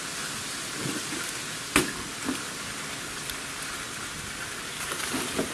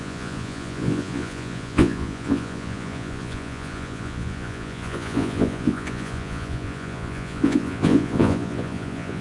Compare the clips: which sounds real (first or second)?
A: first